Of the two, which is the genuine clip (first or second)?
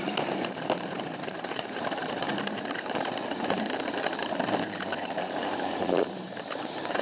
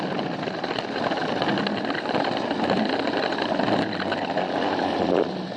second